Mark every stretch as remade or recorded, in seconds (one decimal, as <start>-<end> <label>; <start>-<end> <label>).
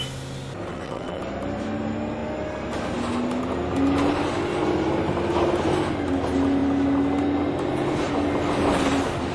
0.0-0.7 recorded; 0.7-1.2 remade; 1.2-9.3 recorded